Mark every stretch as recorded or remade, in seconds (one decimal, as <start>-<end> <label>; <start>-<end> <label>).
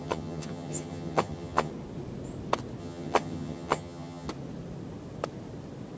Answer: 0.0-1.7 remade; 1.7-2.8 recorded; 2.8-4.3 remade; 4.3-6.0 recorded